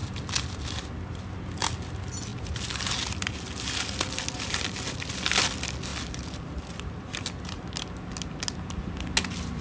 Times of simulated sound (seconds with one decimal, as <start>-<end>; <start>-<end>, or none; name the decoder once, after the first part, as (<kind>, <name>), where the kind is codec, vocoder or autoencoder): none